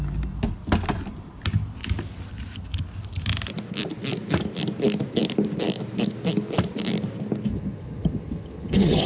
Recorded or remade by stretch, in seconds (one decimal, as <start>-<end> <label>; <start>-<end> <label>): 0.0-7.5 recorded; 7.5-9.1 remade